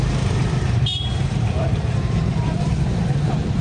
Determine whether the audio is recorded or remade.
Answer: remade